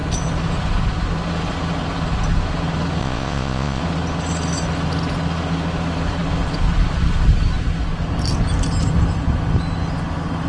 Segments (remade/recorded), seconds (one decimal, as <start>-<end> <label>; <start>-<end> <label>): 0.0-3.0 recorded; 3.0-3.8 remade; 3.8-10.5 recorded